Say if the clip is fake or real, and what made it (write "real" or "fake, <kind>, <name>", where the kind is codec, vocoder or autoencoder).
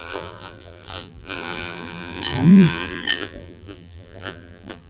fake, vocoder, BigVGAN v2